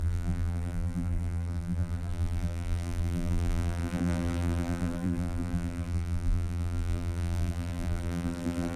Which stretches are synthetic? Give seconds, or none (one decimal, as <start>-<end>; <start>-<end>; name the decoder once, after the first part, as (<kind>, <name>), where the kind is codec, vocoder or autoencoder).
0.0-8.8 (vocoder, BigVGAN v2)